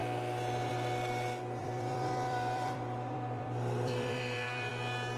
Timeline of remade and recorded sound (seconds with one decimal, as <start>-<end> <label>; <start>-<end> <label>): 0.0-1.6 recorded; 1.6-4.7 remade; 4.7-5.2 recorded